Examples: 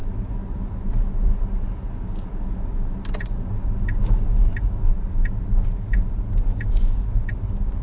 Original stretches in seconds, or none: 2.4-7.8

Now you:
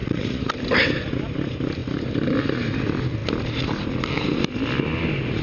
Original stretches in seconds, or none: 0.5-5.4

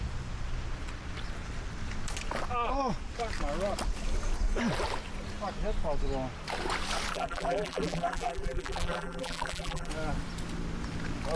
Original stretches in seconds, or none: 0.0-7.1; 9.9-11.4

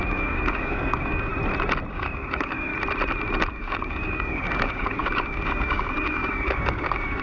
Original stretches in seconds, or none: 1.3-1.9; 2.7-3.5

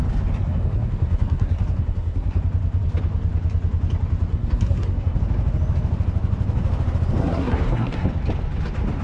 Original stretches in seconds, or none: 0.0-0.4; 2.4-4.3; 5.2-7.2; 8.1-9.0

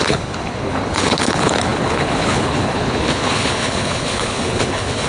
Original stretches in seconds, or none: none